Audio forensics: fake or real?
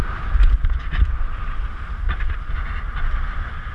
real